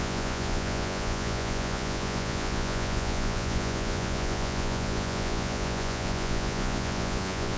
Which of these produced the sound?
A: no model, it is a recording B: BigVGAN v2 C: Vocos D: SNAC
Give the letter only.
C